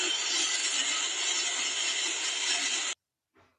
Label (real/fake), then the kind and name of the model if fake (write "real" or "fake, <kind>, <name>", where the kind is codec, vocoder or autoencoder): real